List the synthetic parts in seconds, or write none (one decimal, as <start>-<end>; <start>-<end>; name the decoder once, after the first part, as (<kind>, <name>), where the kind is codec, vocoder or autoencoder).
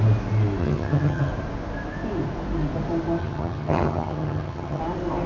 0.6-1.3 (vocoder, HiFi-GAN); 3.2-4.8